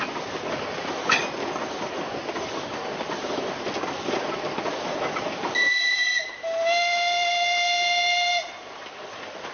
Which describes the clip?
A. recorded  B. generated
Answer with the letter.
A